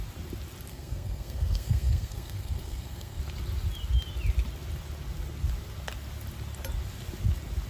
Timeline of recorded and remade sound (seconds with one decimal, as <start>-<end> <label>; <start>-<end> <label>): 0.0-0.7 recorded; 0.7-3.2 remade; 3.2-7.7 recorded